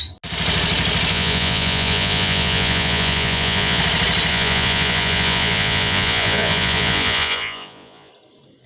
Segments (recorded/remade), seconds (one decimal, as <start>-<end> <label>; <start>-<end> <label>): 0.0-1.1 recorded; 1.1-3.8 remade; 3.8-4.3 recorded; 4.3-8.1 remade; 8.1-8.7 recorded